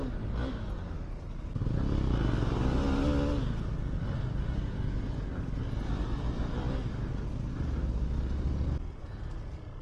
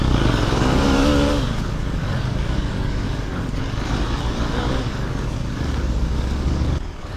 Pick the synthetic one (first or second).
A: second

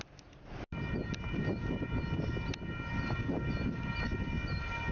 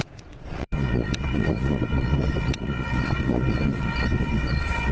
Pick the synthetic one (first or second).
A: second